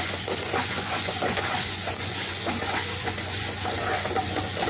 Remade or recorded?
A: remade